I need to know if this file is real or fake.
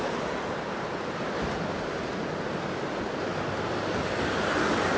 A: real